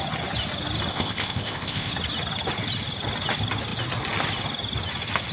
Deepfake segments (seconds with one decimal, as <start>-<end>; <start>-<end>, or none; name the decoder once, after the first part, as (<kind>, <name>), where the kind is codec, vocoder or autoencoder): 0.9-1.9 (codec, ZipCodec)